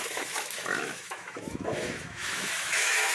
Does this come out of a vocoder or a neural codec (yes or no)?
yes